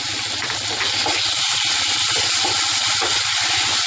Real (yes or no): yes